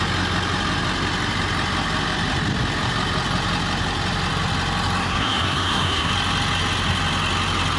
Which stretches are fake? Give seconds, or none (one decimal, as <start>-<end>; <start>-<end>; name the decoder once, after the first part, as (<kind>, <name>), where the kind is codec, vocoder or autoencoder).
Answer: 5.0-6.1 (codec, SNAC)